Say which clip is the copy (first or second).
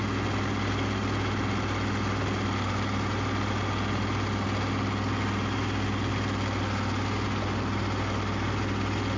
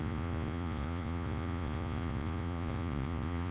second